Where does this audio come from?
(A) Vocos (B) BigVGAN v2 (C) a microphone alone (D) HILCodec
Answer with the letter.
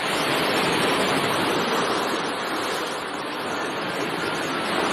B